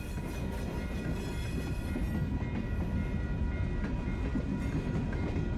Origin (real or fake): real